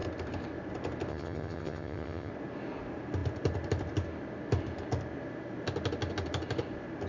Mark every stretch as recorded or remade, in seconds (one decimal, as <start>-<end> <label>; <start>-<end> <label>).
0.0-1.1 recorded; 1.1-2.3 remade; 2.3-7.1 recorded